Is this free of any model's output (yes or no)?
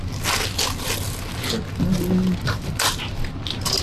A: yes